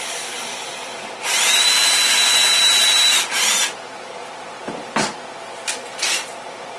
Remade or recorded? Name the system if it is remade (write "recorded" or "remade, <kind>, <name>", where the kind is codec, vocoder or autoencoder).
remade, vocoder, BigVGAN v2